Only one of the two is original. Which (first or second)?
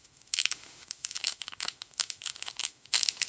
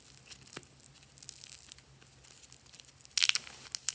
second